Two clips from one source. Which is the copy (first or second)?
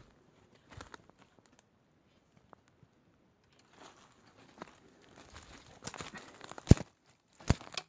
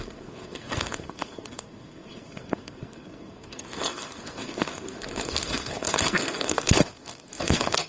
second